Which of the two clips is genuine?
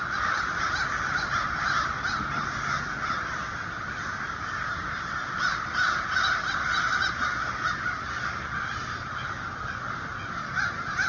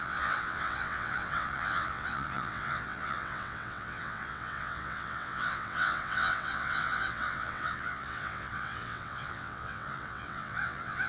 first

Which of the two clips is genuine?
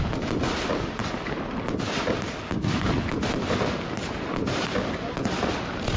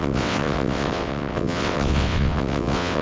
first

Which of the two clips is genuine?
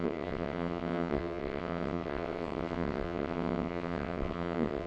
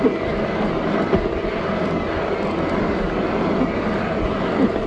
second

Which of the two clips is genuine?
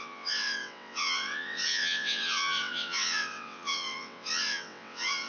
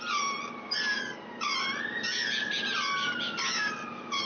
second